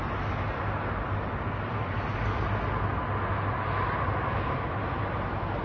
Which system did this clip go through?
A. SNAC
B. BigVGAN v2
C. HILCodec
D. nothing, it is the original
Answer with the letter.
D